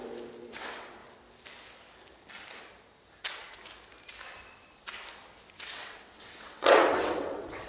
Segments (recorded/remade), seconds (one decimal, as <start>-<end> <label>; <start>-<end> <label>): 0.0-0.5 recorded; 0.5-1.0 remade; 1.0-5.6 recorded; 5.6-7.7 remade